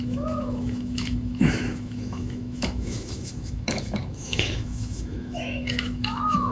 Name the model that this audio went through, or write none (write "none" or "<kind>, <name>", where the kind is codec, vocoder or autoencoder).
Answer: autoencoder, DAC-VAE